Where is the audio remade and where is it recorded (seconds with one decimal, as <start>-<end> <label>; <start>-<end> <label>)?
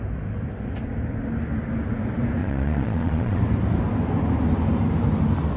0.0-2.4 recorded; 2.4-3.4 remade; 3.4-5.6 recorded